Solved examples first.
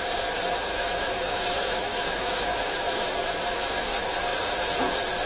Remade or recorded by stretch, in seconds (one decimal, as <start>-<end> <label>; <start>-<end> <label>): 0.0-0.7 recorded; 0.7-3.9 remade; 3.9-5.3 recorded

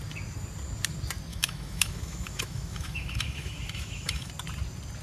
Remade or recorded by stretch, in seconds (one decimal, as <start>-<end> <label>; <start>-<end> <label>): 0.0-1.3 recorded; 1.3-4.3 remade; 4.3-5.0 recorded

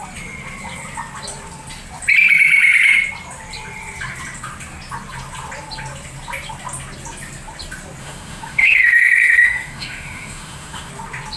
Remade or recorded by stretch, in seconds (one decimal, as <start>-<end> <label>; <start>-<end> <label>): 0.0-8.0 recorded; 8.0-10.9 remade; 10.9-11.4 recorded

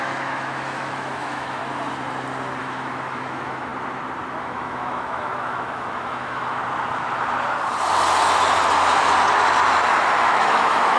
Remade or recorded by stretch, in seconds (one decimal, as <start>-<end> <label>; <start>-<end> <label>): 0.0-1.6 remade; 1.6-2.6 recorded; 2.6-3.7 remade; 3.7-4.4 recorded; 4.4-6.6 remade; 6.6-10.2 recorded; 10.2-11.0 remade

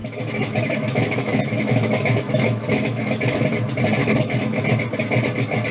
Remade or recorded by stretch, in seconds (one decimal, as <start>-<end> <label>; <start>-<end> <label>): 0.0-3.4 remade; 3.4-4.0 recorded; 4.0-4.6 remade; 4.6-5.7 recorded

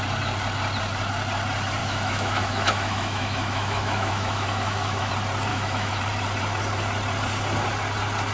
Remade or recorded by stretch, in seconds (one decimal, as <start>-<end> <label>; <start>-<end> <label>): 0.0-1.8 recorded; 1.8-5.1 remade; 5.1-5.5 recorded; 5.5-6.0 remade; 6.0-8.3 recorded

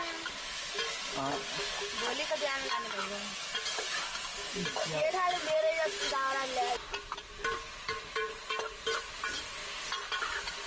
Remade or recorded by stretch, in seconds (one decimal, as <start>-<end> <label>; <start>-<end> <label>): 0.0-10.7 recorded